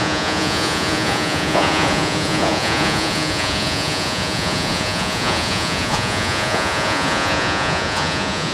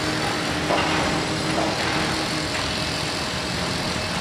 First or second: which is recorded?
second